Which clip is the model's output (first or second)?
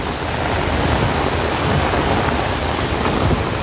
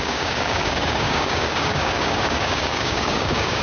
second